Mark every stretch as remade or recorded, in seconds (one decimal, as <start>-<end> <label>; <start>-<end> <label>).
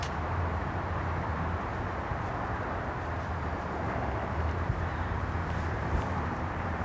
0.0-2.1 remade; 2.1-3.3 recorded; 3.3-6.8 remade